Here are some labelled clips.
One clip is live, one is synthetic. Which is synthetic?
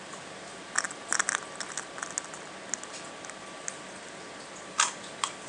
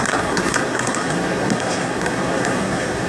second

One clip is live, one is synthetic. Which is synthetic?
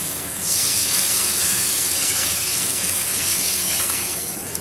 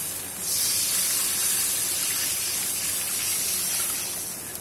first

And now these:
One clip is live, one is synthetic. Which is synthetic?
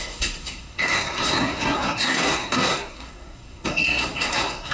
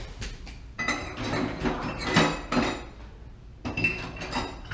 first